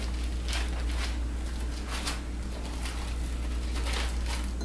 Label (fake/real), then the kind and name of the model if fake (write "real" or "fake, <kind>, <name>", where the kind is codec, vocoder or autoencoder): real